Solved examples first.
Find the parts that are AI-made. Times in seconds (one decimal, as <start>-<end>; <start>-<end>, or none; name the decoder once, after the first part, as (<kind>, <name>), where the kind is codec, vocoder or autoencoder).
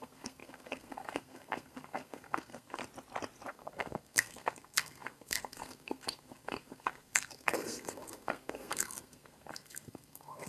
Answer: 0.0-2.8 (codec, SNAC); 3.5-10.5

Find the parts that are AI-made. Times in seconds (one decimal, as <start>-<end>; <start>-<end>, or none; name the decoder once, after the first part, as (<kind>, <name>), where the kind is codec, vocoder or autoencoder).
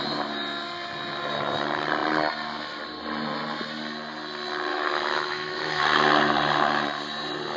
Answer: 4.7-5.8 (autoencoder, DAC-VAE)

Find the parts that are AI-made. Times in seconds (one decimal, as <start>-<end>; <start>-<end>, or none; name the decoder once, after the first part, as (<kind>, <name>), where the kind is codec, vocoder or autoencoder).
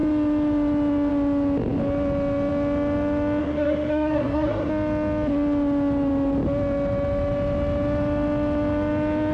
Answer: 3.4-4.7 (codec, SNAC)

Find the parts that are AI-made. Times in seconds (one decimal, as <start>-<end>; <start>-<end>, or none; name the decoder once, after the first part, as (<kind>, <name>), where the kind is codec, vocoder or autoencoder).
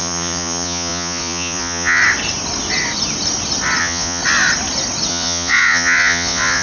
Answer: 0.0-2.0 (vocoder, Vocos); 3.8-4.2; 5.1-6.6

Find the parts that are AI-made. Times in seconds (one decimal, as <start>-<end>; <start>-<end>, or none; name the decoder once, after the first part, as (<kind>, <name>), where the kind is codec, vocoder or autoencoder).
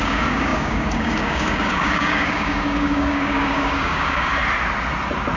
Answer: 0.0-4.3 (codec, DAC)